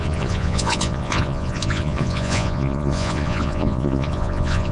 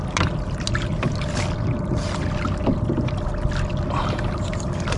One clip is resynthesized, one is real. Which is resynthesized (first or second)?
first